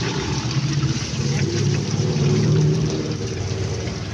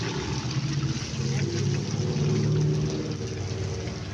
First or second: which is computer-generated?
first